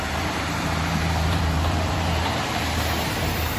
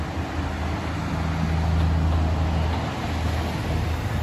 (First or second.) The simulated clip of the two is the first